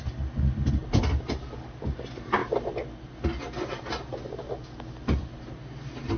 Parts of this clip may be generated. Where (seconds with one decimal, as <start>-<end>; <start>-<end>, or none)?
none